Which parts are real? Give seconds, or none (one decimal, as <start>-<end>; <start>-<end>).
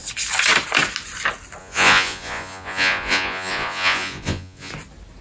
0.0-1.6; 4.7-5.2